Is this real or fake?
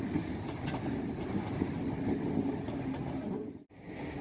real